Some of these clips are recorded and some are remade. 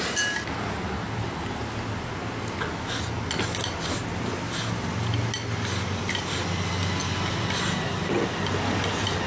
recorded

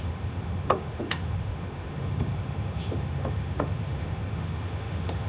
remade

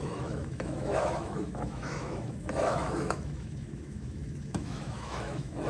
remade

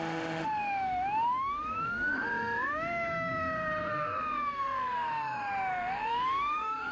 remade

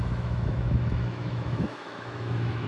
remade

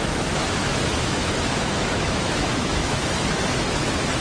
remade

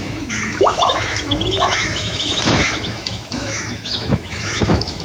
remade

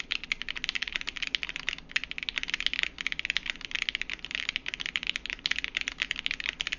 recorded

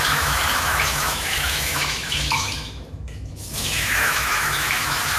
remade